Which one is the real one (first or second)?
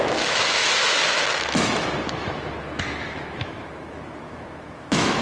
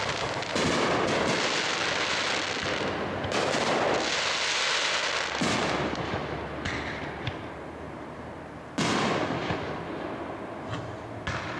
second